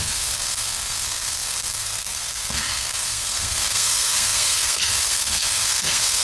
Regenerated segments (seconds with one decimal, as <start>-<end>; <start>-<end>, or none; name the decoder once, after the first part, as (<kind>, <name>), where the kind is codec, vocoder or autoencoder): 0.0-6.2 (codec, SNAC)